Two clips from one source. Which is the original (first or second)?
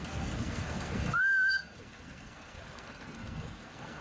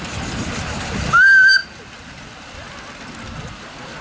second